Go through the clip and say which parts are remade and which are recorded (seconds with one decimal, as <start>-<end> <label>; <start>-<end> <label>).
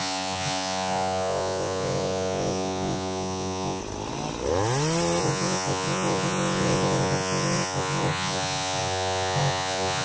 0.0-3.8 remade; 3.8-5.2 recorded; 5.2-10.0 remade